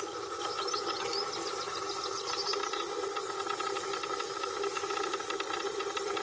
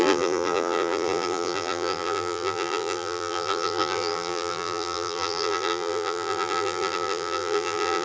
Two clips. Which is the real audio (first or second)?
first